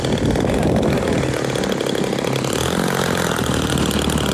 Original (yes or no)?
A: yes